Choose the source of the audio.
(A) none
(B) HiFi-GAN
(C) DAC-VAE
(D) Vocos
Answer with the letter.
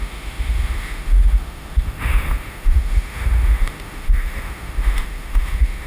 C